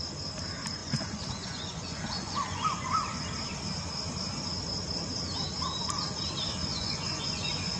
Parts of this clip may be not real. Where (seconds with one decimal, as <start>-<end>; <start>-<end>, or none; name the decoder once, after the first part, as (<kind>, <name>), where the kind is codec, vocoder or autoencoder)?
0.8-3.2 (vocoder, Vocos); 6.7-7.8